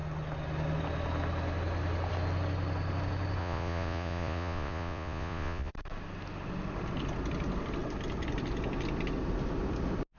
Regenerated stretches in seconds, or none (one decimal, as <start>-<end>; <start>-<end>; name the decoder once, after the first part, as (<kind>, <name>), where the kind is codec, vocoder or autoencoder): 3.4-5.7 (vocoder, Vocos)